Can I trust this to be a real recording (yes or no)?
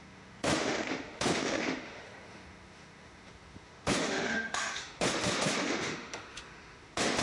no